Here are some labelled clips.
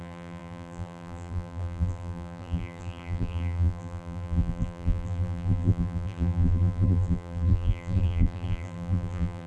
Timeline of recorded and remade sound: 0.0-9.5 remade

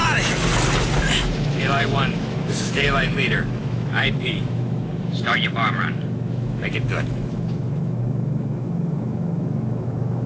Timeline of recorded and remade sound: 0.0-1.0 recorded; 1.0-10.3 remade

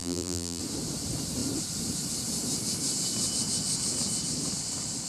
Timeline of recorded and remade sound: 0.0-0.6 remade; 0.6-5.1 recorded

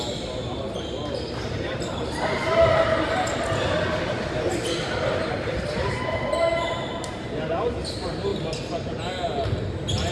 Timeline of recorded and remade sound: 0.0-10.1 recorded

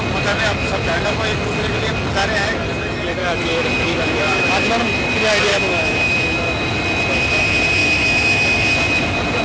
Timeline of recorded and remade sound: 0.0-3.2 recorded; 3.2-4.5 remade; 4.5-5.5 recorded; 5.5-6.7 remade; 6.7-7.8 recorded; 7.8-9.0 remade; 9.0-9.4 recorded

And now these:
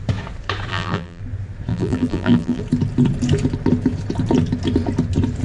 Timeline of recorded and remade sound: 0.0-0.7 recorded; 0.7-1.2 remade; 1.2-1.7 recorded; 1.7-2.6 remade; 2.6-5.4 recorded